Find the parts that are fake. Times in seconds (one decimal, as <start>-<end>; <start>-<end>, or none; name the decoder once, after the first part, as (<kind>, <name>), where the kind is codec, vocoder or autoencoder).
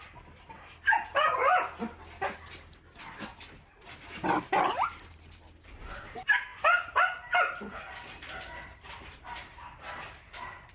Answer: none